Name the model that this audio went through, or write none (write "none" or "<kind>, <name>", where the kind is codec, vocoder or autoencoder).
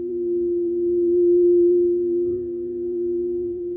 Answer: vocoder, BigVGAN v2